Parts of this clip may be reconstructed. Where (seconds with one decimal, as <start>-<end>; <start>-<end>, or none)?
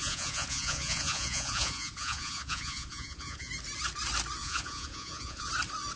0.0-3.5; 4.4-5.5